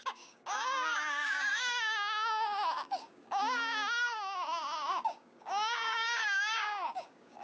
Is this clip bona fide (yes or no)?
no